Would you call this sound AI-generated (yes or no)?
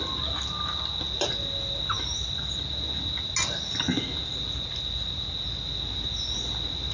no